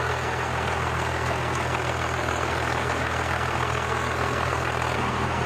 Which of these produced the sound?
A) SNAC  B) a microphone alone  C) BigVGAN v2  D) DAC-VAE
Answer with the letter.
A